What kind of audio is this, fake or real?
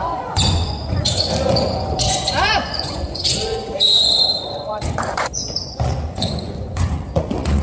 fake